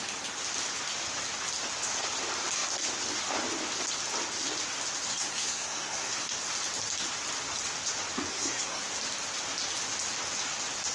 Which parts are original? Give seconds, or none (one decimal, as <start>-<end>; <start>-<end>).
0.0-5.1; 6.3-8.3; 8.8-10.9